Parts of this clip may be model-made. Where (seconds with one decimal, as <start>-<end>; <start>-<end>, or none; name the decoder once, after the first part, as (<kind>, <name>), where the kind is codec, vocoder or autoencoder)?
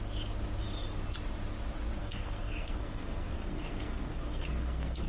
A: 2.0-5.1 (codec, SNAC)